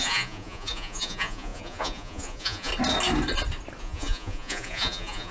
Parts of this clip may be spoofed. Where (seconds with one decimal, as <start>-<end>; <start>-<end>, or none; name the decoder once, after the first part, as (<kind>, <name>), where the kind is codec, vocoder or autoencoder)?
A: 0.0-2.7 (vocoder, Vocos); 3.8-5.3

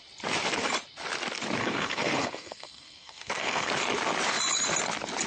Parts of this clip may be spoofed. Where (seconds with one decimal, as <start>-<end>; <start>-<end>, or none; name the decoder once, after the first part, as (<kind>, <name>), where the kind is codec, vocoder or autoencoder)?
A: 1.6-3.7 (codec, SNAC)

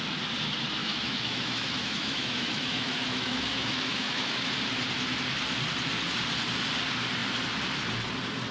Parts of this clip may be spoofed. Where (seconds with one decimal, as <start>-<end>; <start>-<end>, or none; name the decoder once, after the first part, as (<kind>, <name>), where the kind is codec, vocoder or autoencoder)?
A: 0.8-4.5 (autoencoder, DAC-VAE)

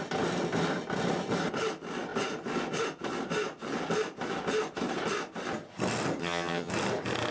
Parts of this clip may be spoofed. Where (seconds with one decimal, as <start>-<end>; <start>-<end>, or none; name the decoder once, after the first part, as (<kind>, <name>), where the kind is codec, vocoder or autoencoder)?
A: 6.2-6.7 (vocoder, HiFi-GAN)